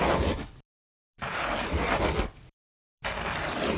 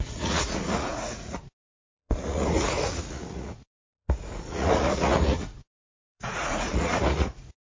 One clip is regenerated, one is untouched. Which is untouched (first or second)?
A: first